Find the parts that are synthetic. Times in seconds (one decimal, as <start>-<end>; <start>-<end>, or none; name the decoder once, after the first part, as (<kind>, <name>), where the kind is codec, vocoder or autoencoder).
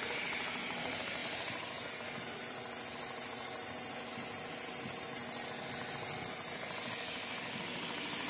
none